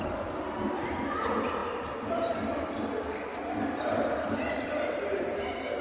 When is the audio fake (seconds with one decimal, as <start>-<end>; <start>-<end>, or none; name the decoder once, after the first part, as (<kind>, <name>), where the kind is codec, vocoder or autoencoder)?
0.0-1.6 (vocoder, BigVGAN v2); 2.1-3.3; 3.8-5.8